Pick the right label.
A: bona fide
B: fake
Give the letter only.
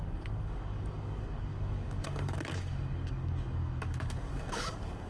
B